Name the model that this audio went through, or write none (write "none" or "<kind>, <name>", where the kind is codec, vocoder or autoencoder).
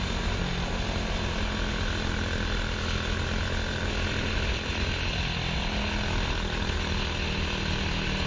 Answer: none